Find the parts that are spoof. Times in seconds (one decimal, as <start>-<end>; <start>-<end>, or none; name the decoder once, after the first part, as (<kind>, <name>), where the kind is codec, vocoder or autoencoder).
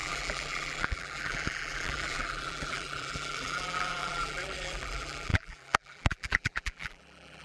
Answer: 0.0-7.4 (vocoder, BigVGAN v2)